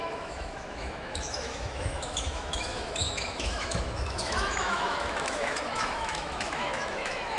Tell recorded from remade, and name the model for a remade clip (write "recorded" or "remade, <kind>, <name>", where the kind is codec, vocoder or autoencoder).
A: remade, autoencoder, DAC-VAE